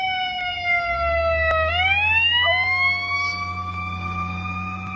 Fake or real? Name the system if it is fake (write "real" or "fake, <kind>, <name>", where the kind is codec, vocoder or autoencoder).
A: real